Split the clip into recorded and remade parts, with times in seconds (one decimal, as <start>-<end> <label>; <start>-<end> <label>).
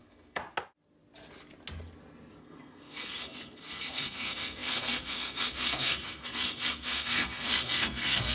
0.0-0.4 remade; 0.4-2.4 recorded; 2.4-8.3 remade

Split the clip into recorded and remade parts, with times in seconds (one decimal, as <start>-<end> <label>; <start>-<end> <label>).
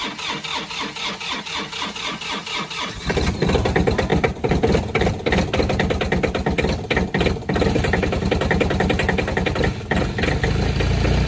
0.0-4.1 recorded; 4.1-5.1 remade; 5.1-11.3 recorded